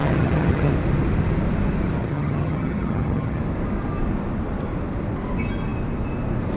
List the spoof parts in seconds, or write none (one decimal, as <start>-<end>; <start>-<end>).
0.0-0.7; 2.0-3.4